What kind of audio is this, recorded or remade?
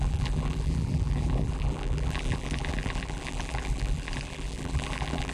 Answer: remade